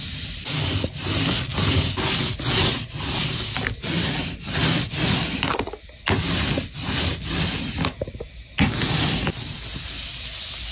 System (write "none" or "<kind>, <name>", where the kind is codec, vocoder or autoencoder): none